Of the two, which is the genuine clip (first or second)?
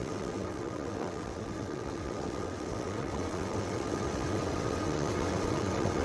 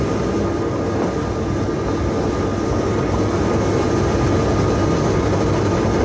second